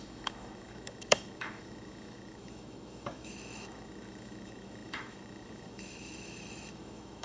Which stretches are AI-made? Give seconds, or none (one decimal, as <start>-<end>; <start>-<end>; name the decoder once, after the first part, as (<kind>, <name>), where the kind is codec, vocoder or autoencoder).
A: 0.0-7.2 (autoencoder, DAC-VAE)